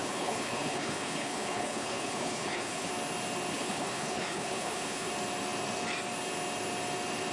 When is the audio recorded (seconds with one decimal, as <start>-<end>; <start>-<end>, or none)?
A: 2.9-3.5; 5.1-7.3